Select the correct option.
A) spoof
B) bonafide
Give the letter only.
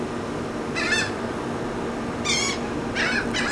B